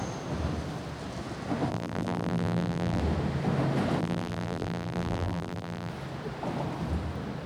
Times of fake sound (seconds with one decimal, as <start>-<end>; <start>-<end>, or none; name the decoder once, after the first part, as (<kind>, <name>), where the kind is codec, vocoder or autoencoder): 1.7-3.0 (vocoder, BigVGAN v2); 4.0-5.9